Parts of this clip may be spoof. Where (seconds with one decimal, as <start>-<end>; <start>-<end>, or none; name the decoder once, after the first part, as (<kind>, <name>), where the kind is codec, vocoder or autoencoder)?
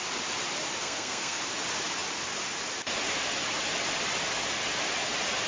0.8-1.4 (codec, SNAC)